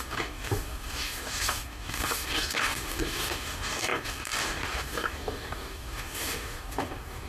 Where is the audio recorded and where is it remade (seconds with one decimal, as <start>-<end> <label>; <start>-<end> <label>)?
0.0-7.3 remade